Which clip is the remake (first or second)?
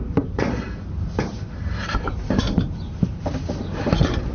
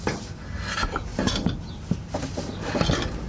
first